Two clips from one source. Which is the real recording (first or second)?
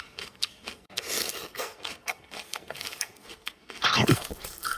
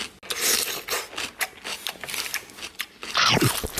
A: second